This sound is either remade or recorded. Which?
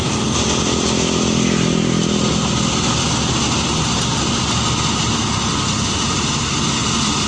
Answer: recorded